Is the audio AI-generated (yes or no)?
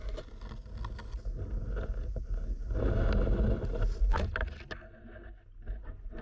no